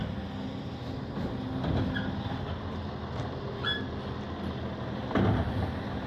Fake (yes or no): no